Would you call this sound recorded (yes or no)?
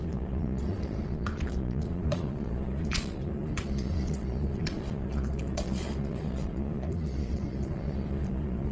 no